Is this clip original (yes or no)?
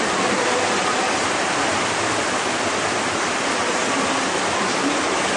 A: yes